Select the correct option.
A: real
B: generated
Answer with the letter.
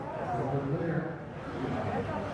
A